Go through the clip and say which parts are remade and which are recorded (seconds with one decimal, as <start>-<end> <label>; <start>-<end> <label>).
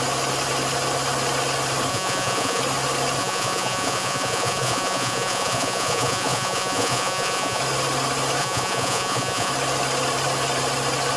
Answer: 0.0-1.9 recorded; 1.9-2.6 remade; 2.6-3.2 recorded; 3.2-7.6 remade; 7.6-8.4 recorded; 8.4-9.5 remade; 9.5-11.2 recorded